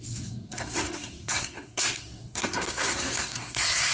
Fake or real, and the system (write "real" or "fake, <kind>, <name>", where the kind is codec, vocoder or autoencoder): fake, codec, SNAC